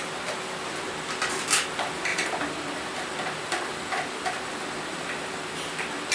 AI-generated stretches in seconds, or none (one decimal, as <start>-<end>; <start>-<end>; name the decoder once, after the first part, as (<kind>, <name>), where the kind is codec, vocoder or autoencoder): 2.1-6.1 (vocoder, BigVGAN v2)